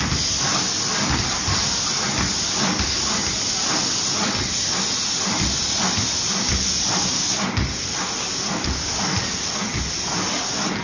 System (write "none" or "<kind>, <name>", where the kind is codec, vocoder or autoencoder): none